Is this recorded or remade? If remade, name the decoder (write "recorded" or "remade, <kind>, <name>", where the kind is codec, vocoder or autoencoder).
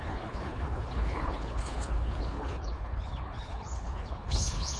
remade, codec, HILCodec